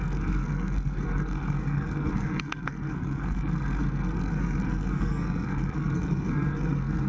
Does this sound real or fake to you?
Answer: fake